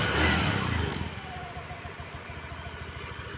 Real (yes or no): yes